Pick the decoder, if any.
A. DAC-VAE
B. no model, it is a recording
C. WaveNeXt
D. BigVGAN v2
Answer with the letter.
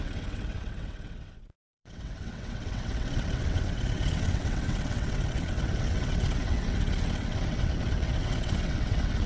C